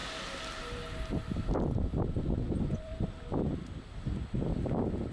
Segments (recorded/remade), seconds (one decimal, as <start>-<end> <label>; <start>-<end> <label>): 0.0-2.1 recorded; 2.1-2.9 remade; 2.9-5.1 recorded